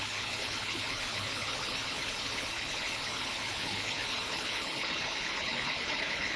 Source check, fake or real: fake